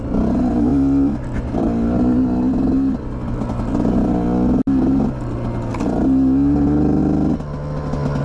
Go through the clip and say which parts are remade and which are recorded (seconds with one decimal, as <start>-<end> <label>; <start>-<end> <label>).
0.0-8.2 recorded